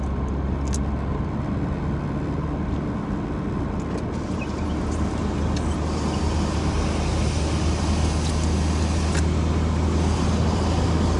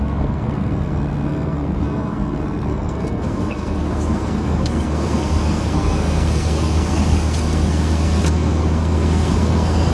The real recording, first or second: first